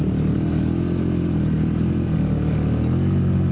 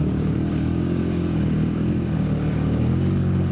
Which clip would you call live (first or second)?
first